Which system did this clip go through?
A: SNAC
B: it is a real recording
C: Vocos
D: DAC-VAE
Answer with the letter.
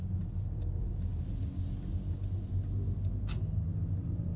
B